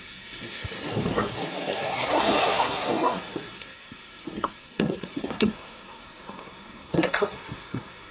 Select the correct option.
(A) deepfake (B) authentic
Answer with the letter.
A